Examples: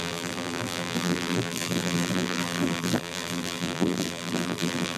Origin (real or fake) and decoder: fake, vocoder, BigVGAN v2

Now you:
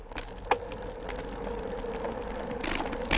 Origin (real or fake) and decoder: real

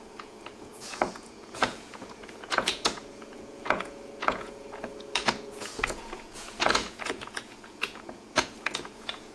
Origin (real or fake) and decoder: fake, vocoder, Vocos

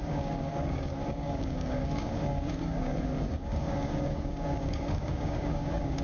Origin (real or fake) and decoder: fake, codec, DAC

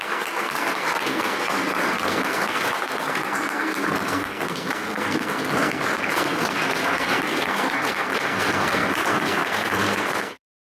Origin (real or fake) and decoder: fake, codec, SNAC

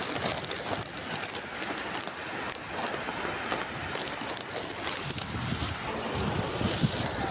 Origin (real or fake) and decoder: real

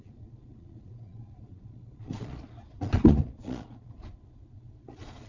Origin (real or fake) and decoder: fake, vocoder, Vocos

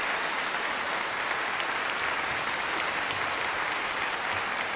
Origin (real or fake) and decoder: real